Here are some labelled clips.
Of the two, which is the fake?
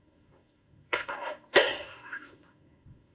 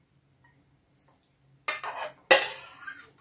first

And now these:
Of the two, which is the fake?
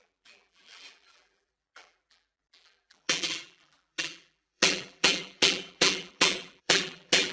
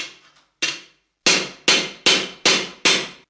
first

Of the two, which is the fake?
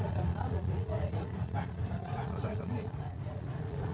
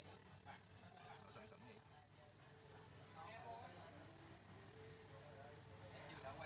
first